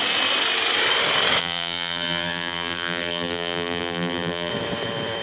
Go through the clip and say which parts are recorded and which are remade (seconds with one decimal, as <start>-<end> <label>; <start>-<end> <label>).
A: 0.0-1.4 recorded; 1.4-4.5 remade; 4.5-5.2 recorded

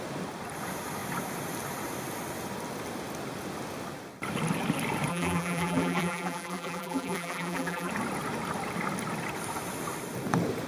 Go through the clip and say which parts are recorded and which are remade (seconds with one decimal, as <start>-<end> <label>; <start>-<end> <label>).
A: 0.0-5.1 recorded; 5.1-7.9 remade; 7.9-10.7 recorded

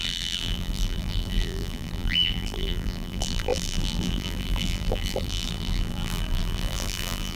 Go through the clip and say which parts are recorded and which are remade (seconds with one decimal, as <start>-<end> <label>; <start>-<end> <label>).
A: 0.0-7.4 remade

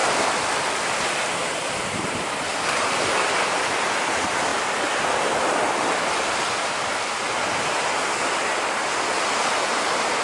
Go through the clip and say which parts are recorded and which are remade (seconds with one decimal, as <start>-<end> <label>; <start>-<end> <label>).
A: 0.0-4.5 recorded; 4.5-7.2 remade; 7.2-10.2 recorded

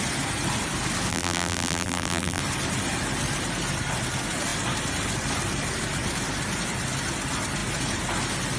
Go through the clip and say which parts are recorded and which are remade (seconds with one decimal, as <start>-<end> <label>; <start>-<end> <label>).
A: 0.0-1.1 recorded; 1.1-2.4 remade; 2.4-8.6 recorded

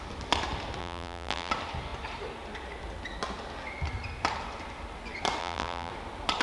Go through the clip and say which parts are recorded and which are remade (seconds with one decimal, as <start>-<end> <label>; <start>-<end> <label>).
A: 0.0-0.8 recorded; 0.8-1.5 remade; 1.5-5.4 recorded; 5.4-5.9 remade; 5.9-6.4 recorded

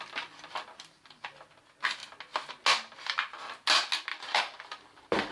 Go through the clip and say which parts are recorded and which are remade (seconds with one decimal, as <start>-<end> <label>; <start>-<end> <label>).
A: 0.0-4.1 recorded; 4.1-5.3 remade